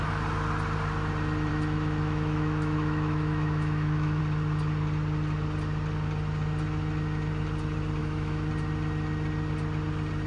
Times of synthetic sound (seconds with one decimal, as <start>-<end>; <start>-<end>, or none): 1.5-4.2; 8.0-8.5